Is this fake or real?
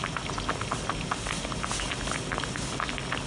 real